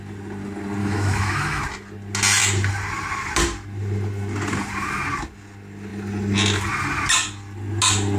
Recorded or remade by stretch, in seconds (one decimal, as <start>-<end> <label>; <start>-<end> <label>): 0.0-0.8 recorded; 0.8-1.6 remade; 1.6-8.2 recorded